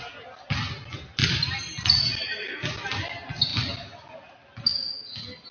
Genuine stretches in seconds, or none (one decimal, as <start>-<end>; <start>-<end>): 0.0-5.5